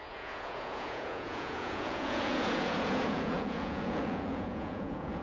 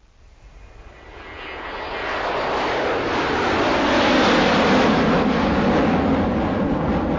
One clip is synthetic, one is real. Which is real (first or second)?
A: second